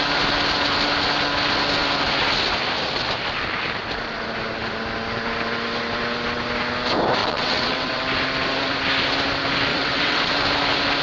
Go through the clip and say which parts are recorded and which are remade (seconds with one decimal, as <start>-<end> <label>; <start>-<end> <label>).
0.0-7.2 recorded; 7.2-8.0 remade; 8.0-9.7 recorded; 9.7-10.3 remade; 10.3-11.0 recorded